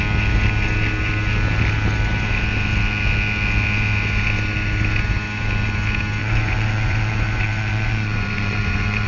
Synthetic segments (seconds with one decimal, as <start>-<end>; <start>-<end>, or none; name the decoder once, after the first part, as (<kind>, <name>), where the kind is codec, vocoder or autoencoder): 6.2-9.1 (vocoder, Vocos)